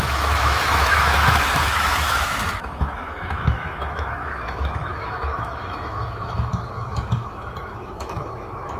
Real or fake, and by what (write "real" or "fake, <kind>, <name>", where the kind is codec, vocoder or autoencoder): fake, autoencoder, DAC-VAE